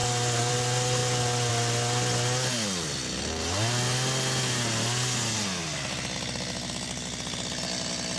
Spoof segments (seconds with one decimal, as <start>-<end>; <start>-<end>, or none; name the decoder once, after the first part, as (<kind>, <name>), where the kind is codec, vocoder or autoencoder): none